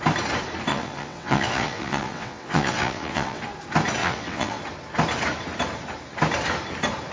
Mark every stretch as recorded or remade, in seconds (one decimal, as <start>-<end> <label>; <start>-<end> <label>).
0.0-0.7 recorded; 0.7-3.4 remade; 3.4-4.0 recorded; 4.0-4.6 remade; 4.6-7.1 recorded